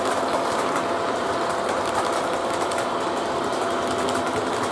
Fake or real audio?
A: real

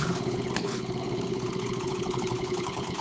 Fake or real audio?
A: fake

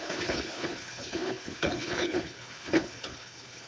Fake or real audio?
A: fake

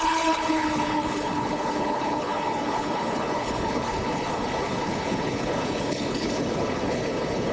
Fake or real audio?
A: fake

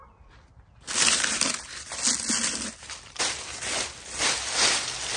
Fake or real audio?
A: real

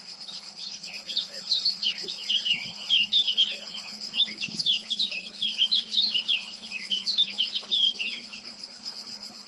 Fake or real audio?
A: fake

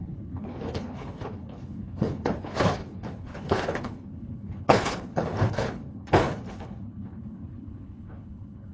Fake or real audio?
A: fake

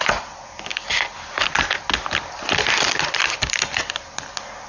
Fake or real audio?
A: real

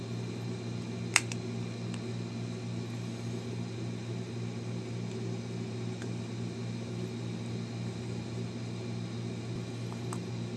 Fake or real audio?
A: real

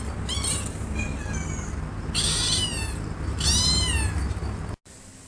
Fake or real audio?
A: real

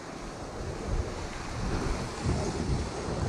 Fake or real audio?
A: real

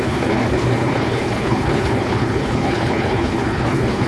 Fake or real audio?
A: fake